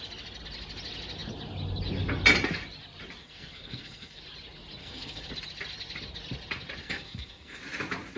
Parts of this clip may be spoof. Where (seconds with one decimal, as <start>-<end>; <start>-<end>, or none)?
3.2-4.2; 4.8-5.3; 6.8-7.6